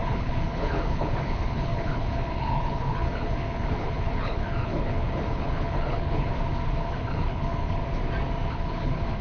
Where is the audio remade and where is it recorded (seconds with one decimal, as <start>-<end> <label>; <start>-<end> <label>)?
0.0-6.3 remade; 6.3-6.8 recorded; 6.8-7.8 remade; 7.8-8.5 recorded; 8.5-9.2 remade